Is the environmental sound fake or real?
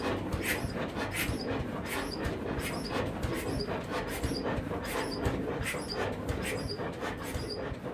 real